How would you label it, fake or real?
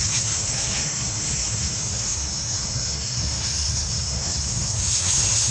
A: fake